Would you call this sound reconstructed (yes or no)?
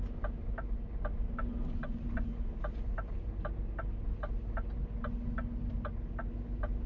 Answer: no